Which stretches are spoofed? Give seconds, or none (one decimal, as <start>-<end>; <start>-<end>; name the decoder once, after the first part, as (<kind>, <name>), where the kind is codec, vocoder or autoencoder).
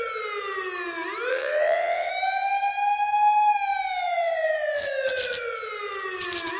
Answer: 1.3-2.1 (vocoder, WaveNeXt)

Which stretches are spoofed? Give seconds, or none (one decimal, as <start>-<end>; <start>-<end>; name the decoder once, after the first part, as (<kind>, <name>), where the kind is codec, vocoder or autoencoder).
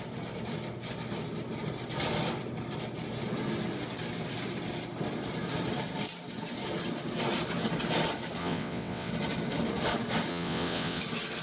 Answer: 8.4-9.1 (vocoder, WaveNeXt); 10.3-11.0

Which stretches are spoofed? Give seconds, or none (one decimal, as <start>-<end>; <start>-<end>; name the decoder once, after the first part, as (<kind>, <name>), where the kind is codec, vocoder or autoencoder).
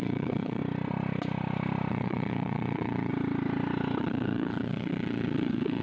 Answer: 0.0-0.6 (vocoder, WaveNeXt); 1.9-3.1; 4.0-5.8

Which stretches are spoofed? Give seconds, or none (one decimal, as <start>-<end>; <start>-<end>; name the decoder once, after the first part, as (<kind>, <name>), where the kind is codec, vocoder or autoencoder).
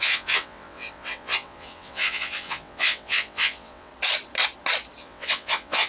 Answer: 0.0-3.9 (vocoder, WaveNeXt); 5.0-5.9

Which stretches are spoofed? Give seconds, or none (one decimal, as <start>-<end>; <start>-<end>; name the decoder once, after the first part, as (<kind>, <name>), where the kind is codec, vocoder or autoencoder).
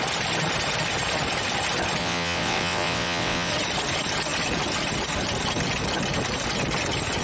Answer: 2.0-3.5 (vocoder, WaveNeXt)